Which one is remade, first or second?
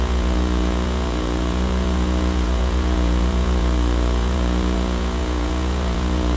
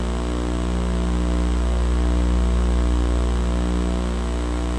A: first